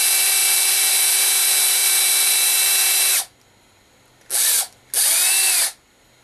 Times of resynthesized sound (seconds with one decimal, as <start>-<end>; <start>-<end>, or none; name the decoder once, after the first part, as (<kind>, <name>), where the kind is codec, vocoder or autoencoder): none